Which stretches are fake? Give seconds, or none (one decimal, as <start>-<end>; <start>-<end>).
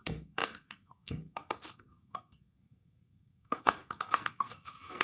0.0-5.0